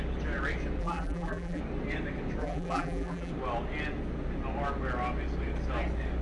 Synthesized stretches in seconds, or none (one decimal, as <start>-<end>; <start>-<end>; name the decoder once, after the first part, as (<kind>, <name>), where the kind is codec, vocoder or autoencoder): 0.8-1.6 (vocoder, BigVGAN v2); 2.4-3.3